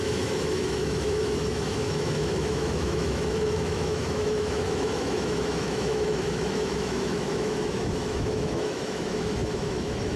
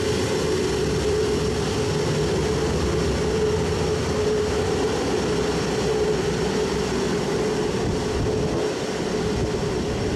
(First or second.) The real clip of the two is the second